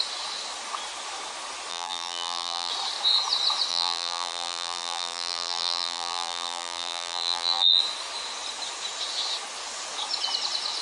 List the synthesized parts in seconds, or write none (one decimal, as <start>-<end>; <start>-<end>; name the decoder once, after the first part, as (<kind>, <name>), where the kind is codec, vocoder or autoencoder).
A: 1.7-2.7 (vocoder, BigVGAN v2); 3.7-7.8